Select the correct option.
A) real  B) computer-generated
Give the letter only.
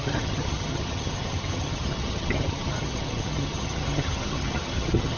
B